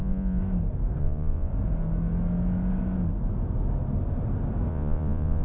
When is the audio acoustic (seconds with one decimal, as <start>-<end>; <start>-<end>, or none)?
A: 0.4-1.0; 1.5-4.7